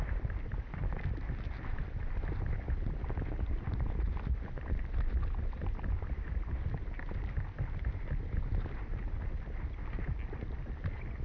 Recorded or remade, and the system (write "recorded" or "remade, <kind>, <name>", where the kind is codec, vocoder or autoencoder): recorded